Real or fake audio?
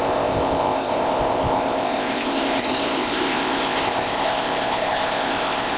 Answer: fake